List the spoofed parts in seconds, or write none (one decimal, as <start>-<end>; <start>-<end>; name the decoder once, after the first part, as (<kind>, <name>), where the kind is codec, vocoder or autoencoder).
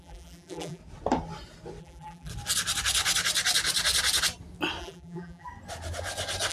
0.0-0.8 (vocoder, BigVGAN v2); 1.8-2.3; 4.8-5.5